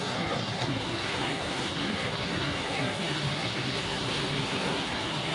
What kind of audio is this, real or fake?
fake